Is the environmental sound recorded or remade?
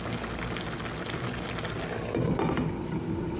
recorded